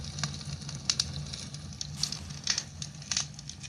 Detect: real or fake real